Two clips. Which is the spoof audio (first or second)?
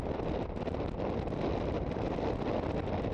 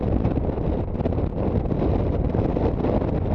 second